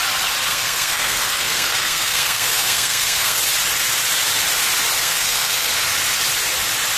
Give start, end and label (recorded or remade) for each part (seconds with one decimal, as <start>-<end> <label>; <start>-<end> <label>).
0.0-0.5 recorded; 0.5-3.4 remade; 3.4-5.0 recorded; 5.0-5.7 remade; 5.7-7.0 recorded